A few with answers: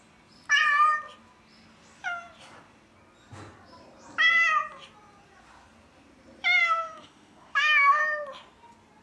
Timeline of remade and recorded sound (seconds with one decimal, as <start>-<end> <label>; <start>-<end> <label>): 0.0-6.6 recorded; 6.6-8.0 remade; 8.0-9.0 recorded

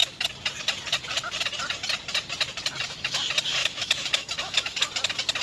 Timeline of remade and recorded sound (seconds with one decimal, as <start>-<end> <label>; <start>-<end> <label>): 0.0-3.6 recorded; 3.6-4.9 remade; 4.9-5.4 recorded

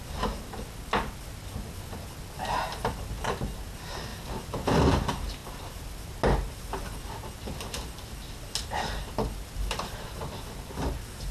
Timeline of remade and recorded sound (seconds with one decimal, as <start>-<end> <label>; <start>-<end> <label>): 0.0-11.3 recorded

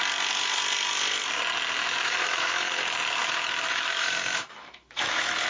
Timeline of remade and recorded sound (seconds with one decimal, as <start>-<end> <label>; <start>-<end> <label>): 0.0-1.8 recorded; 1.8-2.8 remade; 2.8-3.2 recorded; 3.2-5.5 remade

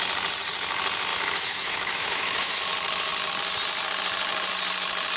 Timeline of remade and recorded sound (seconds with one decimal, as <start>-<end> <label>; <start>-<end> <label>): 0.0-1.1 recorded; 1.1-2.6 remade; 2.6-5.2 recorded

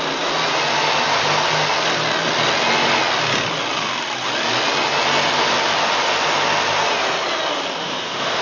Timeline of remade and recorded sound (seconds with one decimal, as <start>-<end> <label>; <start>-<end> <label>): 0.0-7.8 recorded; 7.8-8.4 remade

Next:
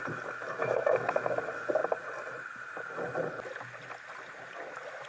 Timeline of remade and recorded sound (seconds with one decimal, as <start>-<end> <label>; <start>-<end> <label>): 0.0-0.6 recorded; 0.6-1.4 remade; 1.4-5.1 recorded

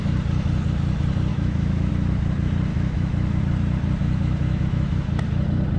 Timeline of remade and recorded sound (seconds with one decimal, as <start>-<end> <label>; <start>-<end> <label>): 0.0-1.3 recorded; 1.3-1.9 remade; 1.9-2.7 recorded; 2.7-3.4 remade; 3.4-4.0 recorded; 4.0-5.2 remade; 5.2-5.8 recorded